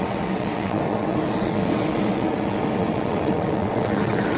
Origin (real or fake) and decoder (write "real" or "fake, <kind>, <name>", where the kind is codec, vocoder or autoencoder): fake, vocoder, WaveNeXt